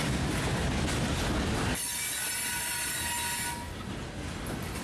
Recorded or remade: recorded